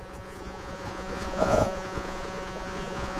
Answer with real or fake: fake